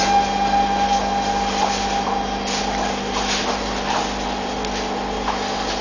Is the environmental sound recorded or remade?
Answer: recorded